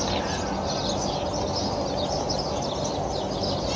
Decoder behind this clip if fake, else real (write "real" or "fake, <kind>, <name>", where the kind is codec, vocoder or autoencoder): real